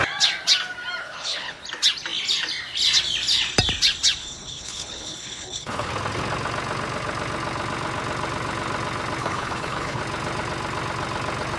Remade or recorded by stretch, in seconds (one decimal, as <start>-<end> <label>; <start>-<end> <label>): 0.0-1.0 recorded; 1.0-1.6 remade; 1.6-4.2 recorded; 4.2-5.9 remade; 5.9-9.2 recorded; 9.2-10.0 remade; 10.0-11.6 recorded